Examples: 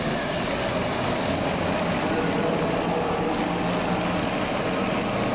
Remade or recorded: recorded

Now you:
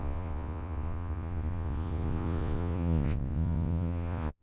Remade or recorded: remade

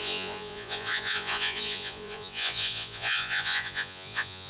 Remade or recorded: remade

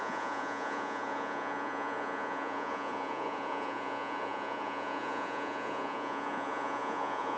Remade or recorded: remade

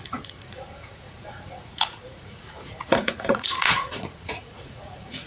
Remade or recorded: remade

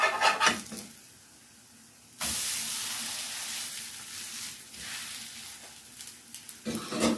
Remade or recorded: recorded